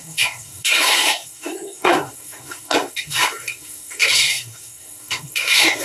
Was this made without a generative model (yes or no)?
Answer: no